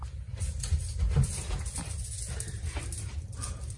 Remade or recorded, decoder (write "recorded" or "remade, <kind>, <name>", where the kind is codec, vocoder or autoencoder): recorded